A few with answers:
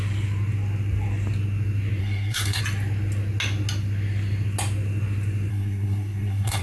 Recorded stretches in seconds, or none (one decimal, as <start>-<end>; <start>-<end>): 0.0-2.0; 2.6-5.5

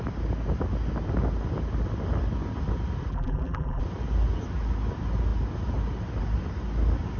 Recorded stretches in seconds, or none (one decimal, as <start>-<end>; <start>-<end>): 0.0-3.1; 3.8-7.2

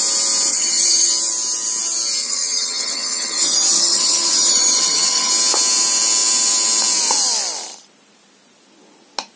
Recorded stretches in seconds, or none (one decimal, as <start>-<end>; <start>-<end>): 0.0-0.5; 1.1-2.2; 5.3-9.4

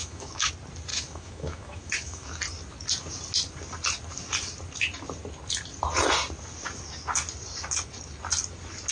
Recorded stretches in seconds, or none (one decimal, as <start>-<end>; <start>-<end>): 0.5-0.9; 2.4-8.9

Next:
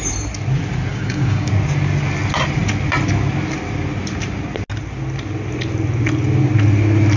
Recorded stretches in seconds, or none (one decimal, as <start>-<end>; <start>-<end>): 0.0-0.9; 1.5-7.2